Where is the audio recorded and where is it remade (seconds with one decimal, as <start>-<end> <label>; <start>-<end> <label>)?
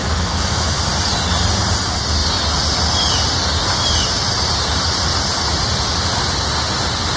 0.0-0.8 remade; 0.8-7.2 recorded